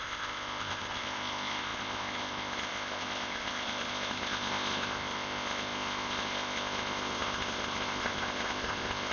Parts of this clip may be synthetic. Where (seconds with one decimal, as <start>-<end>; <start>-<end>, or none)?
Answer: 0.0-9.1